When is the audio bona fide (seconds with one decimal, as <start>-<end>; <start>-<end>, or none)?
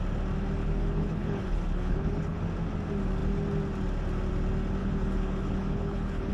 0.0-0.6; 2.4-4.8